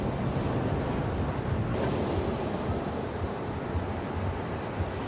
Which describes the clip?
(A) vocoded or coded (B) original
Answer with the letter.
B